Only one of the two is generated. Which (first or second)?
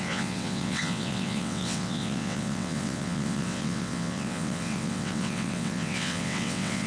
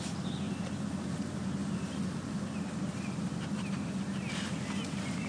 first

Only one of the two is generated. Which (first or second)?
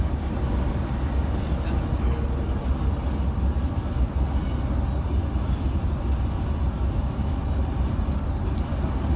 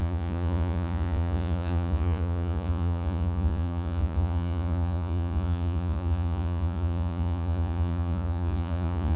second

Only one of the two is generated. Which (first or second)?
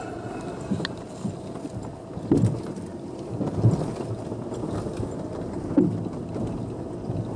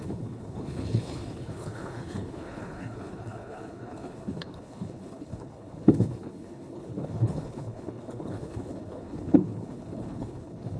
second